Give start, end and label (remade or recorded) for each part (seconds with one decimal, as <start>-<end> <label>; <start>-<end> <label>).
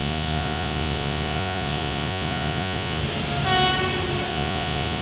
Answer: 0.0-3.0 remade; 3.0-4.3 recorded; 4.3-5.0 remade